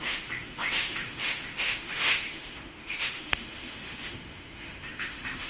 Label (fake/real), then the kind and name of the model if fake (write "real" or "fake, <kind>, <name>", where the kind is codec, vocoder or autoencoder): fake, autoencoder, DAC-VAE